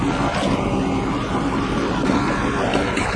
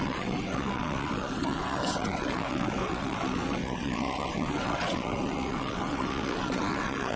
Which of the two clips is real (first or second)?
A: first